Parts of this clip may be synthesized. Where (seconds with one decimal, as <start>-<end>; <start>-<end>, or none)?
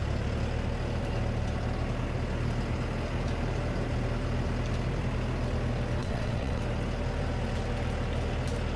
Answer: 6.0-6.6